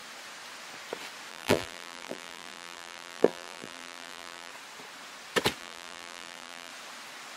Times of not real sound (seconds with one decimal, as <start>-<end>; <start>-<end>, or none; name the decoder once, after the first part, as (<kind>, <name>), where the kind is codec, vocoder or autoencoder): 1.3-4.5 (vocoder, BigVGAN v2); 5.6-6.7

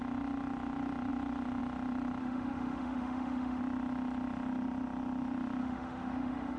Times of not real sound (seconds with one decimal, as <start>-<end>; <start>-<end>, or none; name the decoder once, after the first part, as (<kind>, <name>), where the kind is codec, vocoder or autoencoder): 2.2-3.6 (autoencoder, DAC-VAE); 5.6-6.6

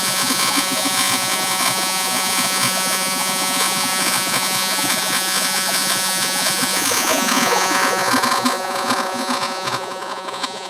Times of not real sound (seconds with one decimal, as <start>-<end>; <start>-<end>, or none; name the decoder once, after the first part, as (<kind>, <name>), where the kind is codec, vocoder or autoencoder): 0.0-10.7 (vocoder, Vocos)

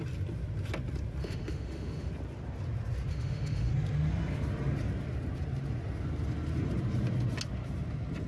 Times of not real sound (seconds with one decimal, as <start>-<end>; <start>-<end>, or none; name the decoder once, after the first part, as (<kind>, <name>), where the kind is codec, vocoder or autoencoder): 1.2-2.1 (autoencoder, DAC-VAE); 3.1-3.7